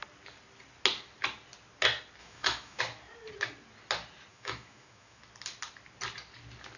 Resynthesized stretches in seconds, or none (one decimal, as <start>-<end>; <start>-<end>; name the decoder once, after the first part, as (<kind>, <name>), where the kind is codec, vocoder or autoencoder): 2.2-2.8 (autoencoder, DAC-VAE); 4.3-5.2